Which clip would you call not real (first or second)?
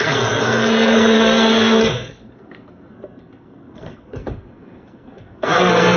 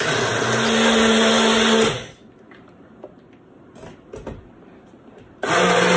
first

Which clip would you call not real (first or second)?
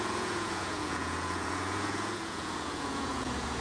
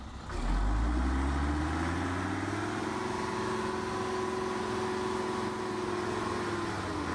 first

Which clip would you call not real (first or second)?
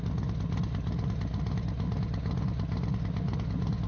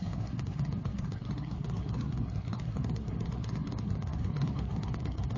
second